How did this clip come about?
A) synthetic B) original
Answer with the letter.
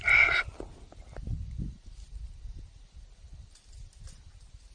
B